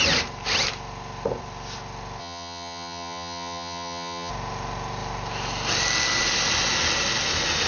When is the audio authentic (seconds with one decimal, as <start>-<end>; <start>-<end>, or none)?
0.0-2.2; 4.3-7.7